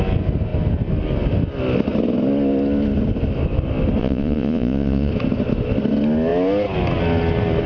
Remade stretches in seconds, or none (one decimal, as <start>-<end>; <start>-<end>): 4.0-5.1